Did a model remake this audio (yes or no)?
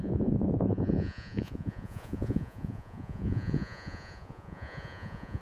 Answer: yes